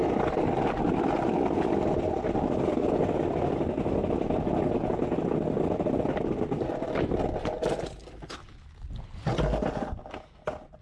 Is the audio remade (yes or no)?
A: no